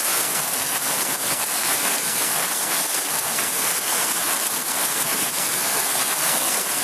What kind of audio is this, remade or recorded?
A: remade